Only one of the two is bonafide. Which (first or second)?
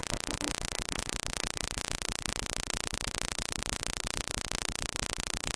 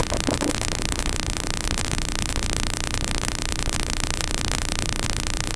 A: first